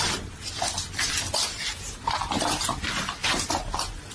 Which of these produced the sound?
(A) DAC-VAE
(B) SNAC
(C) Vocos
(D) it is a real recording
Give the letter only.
D